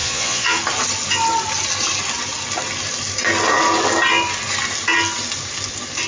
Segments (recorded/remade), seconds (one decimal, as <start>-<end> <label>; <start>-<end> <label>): 0.0-0.6 remade; 0.6-6.1 recorded